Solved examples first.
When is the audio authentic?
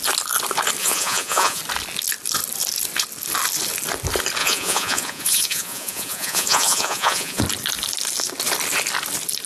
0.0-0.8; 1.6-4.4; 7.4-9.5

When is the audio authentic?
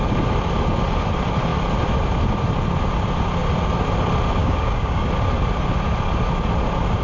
0.0-4.4; 5.1-7.0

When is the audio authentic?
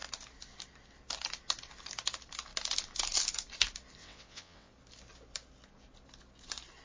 0.0-4.0; 4.7-6.8